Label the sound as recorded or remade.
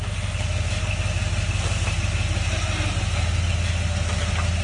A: recorded